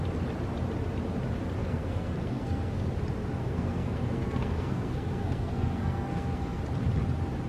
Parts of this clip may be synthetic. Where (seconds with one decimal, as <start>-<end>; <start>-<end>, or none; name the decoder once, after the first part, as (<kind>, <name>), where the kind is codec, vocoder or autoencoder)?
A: 1.6-2.9 (codec, SNAC); 3.4-6.6